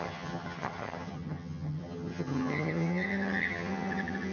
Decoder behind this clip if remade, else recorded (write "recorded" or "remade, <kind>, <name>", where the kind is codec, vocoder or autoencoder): remade, vocoder, HiFi-GAN